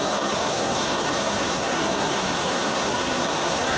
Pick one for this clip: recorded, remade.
remade